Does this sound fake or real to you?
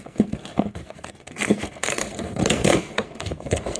fake